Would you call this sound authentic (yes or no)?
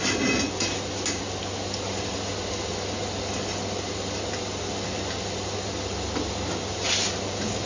yes